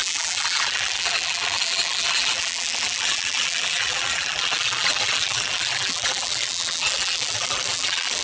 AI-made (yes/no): yes